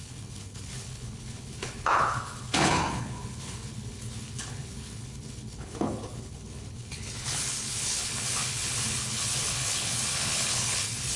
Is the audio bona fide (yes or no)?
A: no